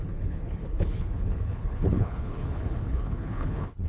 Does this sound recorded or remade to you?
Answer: remade